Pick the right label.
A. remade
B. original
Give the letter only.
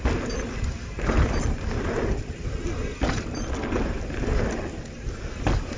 B